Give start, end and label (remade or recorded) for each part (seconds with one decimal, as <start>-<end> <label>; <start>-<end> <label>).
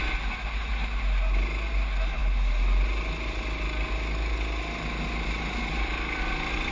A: 0.0-6.7 recorded